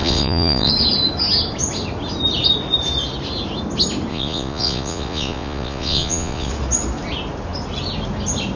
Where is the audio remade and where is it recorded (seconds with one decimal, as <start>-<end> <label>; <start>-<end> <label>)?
0.0-0.7 remade; 0.7-4.1 recorded; 4.1-6.5 remade; 6.5-8.6 recorded